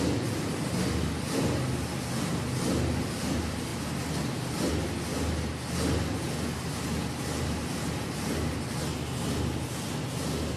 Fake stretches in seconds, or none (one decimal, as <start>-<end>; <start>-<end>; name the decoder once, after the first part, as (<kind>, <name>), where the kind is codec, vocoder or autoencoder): none